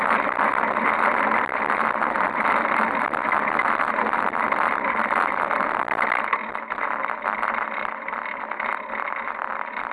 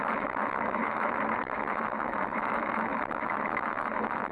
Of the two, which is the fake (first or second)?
second